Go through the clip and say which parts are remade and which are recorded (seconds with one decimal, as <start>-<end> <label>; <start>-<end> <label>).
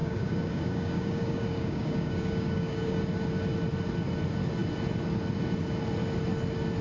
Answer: 0.0-3.0 remade; 3.0-6.8 recorded